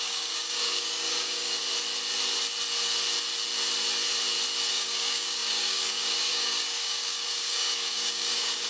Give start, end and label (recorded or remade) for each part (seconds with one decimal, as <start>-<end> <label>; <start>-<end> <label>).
0.0-1.6 remade; 1.6-4.7 recorded; 4.7-8.7 remade